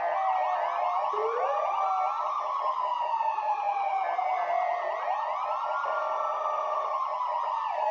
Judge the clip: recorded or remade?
recorded